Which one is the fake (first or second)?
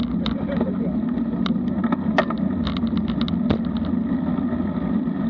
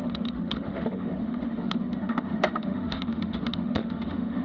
second